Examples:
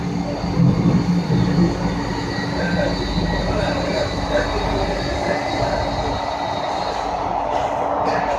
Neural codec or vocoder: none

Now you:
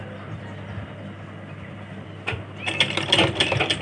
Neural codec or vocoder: none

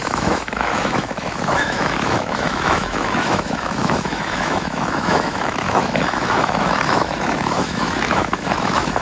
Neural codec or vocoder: autoencoder, DAC-VAE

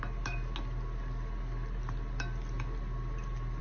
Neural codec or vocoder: none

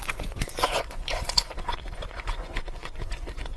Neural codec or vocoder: vocoder, Vocos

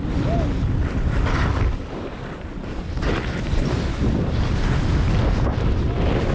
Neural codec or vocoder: none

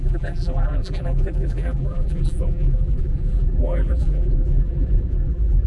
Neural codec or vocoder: vocoder, BigVGAN v2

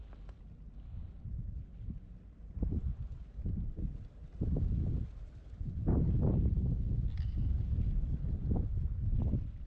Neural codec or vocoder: none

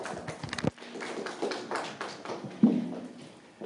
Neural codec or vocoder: none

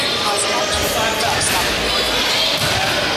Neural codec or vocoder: none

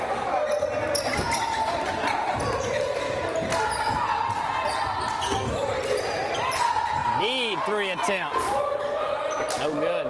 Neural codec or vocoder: none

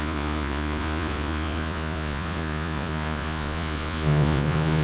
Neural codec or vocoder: vocoder, Vocos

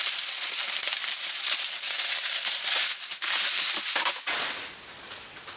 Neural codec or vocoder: none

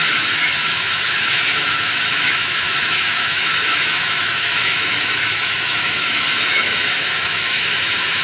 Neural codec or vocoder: autoencoder, DAC-VAE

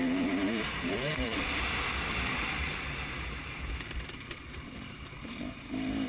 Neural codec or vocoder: vocoder, BigVGAN v2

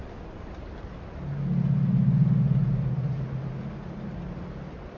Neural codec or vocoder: none